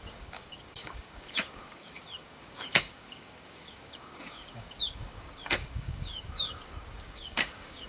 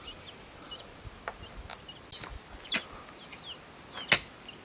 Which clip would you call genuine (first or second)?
second